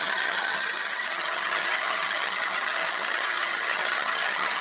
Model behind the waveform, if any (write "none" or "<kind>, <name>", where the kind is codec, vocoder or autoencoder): vocoder, HiFi-GAN